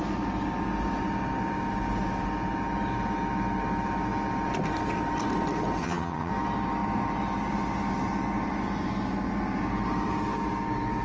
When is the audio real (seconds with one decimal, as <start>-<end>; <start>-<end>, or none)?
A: 0.0-5.8; 6.3-11.0